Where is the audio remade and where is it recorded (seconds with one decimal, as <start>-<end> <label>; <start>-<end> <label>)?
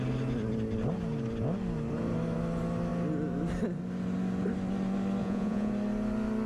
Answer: 0.0-5.2 recorded; 5.2-5.7 remade; 5.7-6.5 recorded